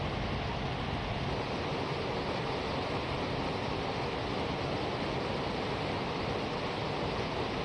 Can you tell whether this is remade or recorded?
recorded